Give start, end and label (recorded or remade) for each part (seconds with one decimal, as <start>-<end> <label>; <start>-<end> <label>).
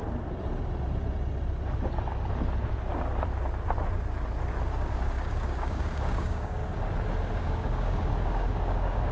0.0-4.9 recorded; 4.9-6.6 remade; 6.6-7.4 recorded; 7.4-9.1 remade